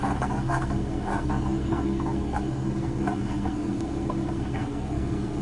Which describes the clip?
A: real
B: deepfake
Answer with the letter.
B